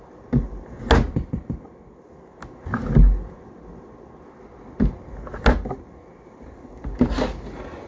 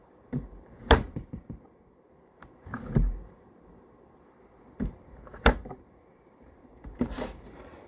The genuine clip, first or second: first